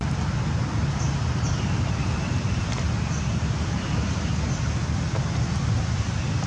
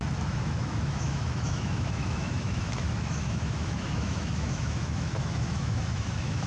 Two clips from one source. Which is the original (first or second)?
first